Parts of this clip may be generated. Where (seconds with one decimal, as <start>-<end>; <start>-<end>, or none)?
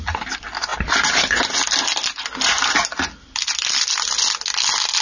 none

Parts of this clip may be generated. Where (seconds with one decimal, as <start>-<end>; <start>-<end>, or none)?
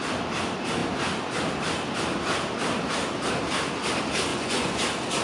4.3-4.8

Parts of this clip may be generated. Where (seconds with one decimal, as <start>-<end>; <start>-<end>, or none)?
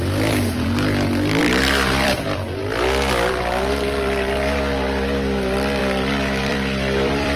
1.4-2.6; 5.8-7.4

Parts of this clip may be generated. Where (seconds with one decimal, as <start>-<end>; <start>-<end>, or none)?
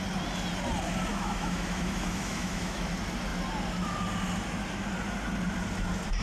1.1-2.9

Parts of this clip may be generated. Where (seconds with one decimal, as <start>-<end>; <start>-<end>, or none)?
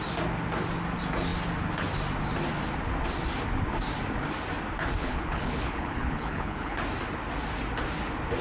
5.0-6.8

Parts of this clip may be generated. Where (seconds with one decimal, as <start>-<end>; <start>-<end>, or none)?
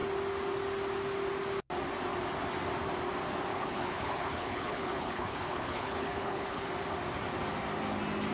3.5-6.7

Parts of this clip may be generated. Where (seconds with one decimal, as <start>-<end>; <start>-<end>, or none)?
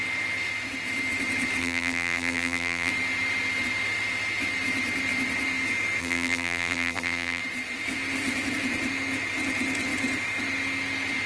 1.6-2.9; 6.0-7.4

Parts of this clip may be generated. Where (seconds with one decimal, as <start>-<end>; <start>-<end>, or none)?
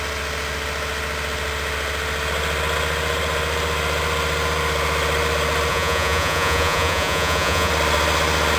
5.7-7.7